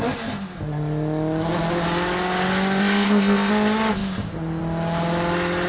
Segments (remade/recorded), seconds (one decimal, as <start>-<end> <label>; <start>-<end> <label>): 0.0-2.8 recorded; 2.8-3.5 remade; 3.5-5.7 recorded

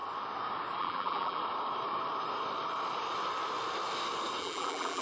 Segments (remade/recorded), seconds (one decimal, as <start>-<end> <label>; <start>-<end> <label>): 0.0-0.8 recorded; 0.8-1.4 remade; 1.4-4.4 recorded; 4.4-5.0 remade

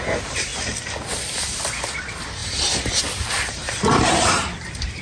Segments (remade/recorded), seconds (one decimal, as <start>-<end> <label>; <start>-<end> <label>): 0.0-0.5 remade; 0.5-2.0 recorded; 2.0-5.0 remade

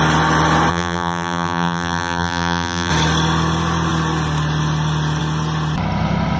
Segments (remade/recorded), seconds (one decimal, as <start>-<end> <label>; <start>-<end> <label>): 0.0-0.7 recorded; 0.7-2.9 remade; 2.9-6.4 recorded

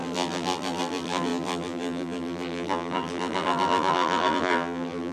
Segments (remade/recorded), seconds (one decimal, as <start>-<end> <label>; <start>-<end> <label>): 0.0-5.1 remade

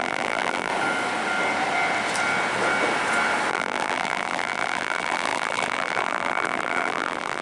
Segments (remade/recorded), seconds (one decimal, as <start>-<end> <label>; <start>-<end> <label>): 0.0-0.7 remade; 0.7-3.5 recorded; 3.5-7.4 remade

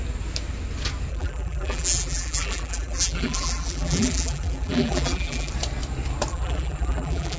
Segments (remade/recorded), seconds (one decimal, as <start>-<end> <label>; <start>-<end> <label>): 0.0-1.1 recorded; 1.1-5.5 remade; 5.5-6.3 recorded; 6.3-7.4 remade

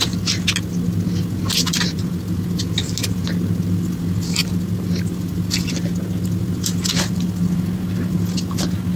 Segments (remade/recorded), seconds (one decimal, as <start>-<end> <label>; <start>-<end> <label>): 0.0-9.0 recorded